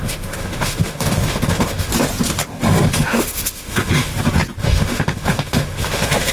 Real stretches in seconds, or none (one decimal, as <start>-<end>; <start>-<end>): 1.9-2.7; 4.1-4.6